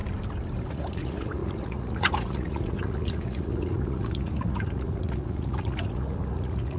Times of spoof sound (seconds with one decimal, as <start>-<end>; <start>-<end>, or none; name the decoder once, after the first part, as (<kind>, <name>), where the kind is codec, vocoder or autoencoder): 0.7-6.8 (vocoder, Vocos)

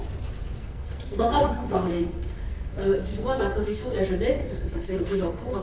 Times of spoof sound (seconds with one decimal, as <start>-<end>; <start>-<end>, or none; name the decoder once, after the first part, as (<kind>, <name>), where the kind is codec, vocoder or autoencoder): 0.6-4.0 (codec, SNAC); 4.4-5.6

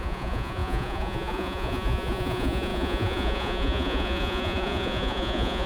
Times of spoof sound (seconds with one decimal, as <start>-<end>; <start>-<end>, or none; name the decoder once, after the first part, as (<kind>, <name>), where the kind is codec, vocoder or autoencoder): 0.0-5.7 (vocoder, Vocos)

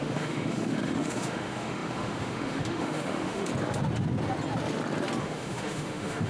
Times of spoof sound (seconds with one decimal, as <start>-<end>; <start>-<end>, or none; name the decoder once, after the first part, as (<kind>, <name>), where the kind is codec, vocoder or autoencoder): 0.0-3.5 (autoencoder, DAC-VAE); 5.2-6.3

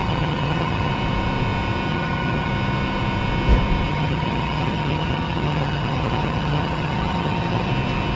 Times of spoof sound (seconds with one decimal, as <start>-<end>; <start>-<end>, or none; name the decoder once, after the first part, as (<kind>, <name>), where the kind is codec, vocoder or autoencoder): 0.0-0.9 (vocoder, HiFi-GAN); 1.9-2.5; 3.9-7.7

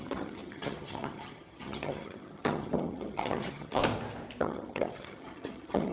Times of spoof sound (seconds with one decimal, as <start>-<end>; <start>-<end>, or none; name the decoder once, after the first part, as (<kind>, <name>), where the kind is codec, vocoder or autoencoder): 0.0-3.8 (vocoder, HiFi-GAN); 4.4-5.9

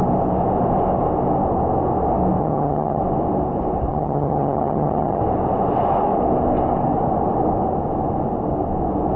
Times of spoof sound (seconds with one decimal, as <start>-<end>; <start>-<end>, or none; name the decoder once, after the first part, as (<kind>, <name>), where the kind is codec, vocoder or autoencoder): 2.4-3.0 (vocoder, HiFi-GAN); 3.9-5.2

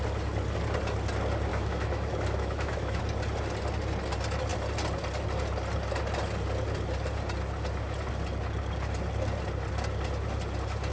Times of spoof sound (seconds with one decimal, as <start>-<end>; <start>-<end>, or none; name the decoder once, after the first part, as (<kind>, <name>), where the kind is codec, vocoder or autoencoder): 1.5-3.0 (autoencoder, DAC-VAE)